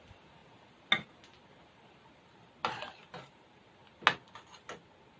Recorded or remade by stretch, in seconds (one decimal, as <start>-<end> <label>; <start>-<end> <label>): 0.0-5.2 recorded